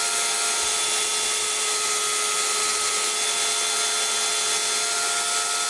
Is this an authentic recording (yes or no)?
yes